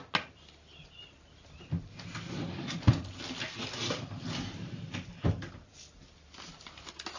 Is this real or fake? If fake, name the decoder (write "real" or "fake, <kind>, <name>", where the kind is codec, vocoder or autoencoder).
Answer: real